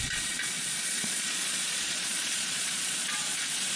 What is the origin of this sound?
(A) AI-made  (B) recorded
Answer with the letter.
A